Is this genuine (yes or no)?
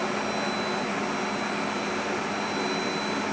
yes